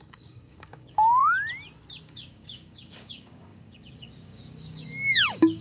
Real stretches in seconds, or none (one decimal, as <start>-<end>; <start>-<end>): 1.2-2.0